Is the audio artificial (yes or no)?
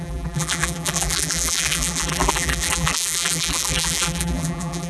yes